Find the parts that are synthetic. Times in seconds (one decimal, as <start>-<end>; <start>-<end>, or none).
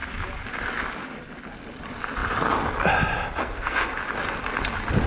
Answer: 3.4-4.0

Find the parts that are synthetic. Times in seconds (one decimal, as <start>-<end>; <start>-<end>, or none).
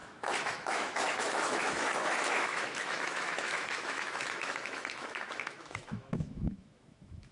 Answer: 0.0-7.3